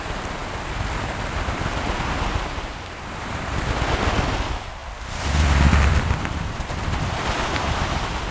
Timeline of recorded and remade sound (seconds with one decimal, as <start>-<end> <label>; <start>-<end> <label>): 0.0-8.3 recorded